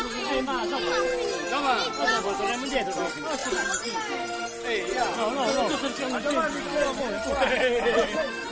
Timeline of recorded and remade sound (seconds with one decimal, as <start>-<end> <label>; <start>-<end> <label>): 0.0-8.5 recorded